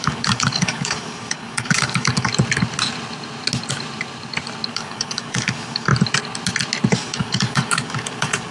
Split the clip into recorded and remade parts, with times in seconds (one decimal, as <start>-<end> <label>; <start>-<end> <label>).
0.0-2.3 remade; 2.3-4.7 recorded; 4.7-5.9 remade; 5.9-6.9 recorded; 6.9-8.5 remade